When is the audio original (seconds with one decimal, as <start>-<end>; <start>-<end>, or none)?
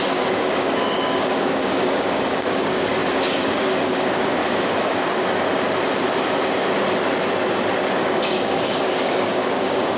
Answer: 4.4-7.9